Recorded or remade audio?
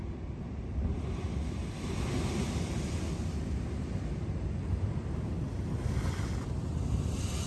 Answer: recorded